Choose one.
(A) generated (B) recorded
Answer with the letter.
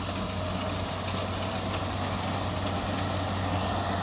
B